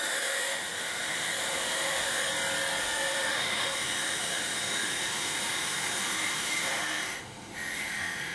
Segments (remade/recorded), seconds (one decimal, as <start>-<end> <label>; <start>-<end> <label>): 0.0-2.3 remade; 2.3-2.8 recorded; 2.8-8.3 remade